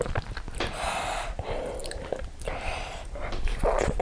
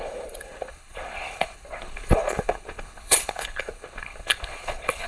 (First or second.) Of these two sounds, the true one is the first